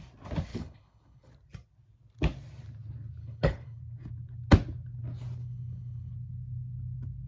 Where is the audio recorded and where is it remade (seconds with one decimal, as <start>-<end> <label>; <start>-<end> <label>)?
0.0-0.5 recorded; 0.5-1.3 remade; 1.3-3.2 recorded; 3.2-3.8 remade; 3.8-5.4 recorded; 5.4-6.1 remade; 6.1-7.3 recorded